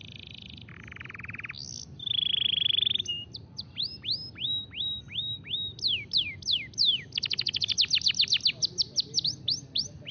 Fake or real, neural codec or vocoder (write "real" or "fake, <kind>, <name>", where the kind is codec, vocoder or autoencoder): real